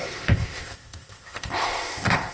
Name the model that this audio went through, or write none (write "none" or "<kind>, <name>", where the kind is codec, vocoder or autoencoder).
codec, ZipCodec